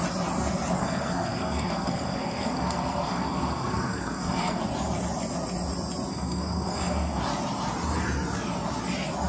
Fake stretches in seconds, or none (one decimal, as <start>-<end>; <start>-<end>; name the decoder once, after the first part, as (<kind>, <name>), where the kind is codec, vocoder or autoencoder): 0.8-4.6 (codec, SNAC); 6.1-7.2